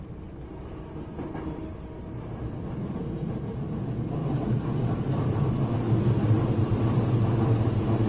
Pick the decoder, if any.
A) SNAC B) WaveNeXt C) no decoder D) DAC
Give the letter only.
C